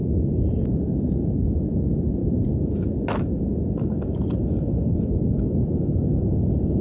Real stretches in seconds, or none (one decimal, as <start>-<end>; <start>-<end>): 0.0-6.8